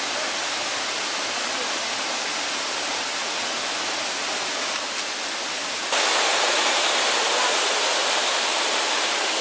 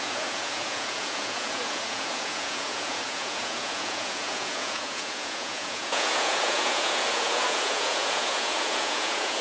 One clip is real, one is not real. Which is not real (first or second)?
second